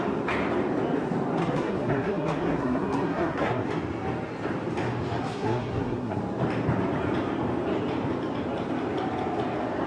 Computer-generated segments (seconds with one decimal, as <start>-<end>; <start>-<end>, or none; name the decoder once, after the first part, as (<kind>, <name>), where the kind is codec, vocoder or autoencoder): 1.4-3.7 (codec, SNAC); 5.2-6.2